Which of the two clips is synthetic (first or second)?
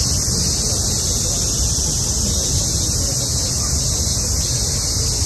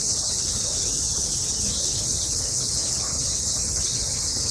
second